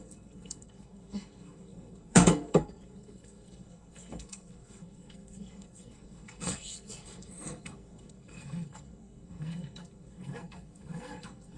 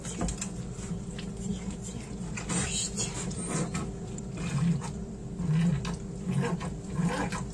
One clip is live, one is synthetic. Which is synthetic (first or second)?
first